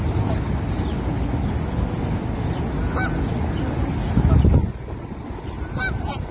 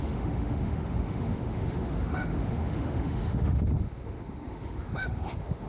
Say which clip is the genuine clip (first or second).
first